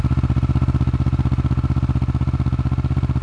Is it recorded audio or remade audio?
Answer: recorded